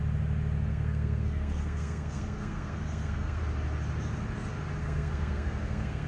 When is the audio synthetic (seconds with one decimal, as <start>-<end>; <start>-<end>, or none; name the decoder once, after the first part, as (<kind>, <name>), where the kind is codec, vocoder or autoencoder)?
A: 0.7-3.4 (codec, SNAC); 4.8-6.1